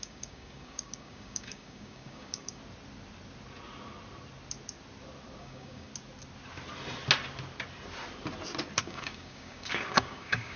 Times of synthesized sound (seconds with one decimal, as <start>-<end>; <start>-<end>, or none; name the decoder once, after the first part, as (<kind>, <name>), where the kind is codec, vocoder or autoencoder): 0.0-2.6 (codec, DAC); 5.4-5.9; 8.8-10.6